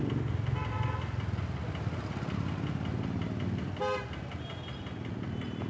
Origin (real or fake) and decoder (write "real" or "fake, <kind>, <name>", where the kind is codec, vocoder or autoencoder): real